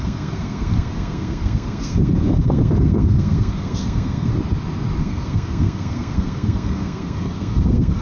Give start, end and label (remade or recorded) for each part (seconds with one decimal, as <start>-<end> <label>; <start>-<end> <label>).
0.0-4.3 remade; 4.3-5.0 recorded; 5.0-8.0 remade